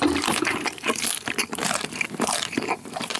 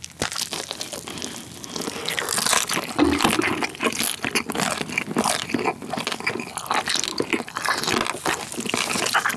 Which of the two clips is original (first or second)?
second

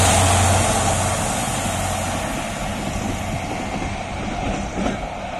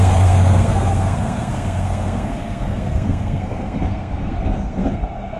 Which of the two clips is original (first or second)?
first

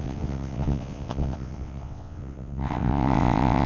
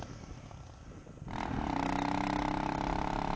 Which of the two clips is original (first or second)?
second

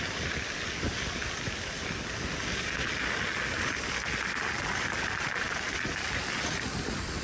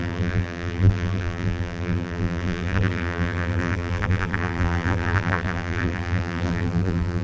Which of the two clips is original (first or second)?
first